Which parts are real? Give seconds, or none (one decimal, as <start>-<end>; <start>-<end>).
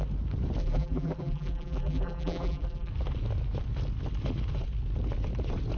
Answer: 0.0-0.6; 2.9-5.8